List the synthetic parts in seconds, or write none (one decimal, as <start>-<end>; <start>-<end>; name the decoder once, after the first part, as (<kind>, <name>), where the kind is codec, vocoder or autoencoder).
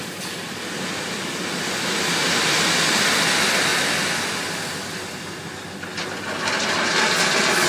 none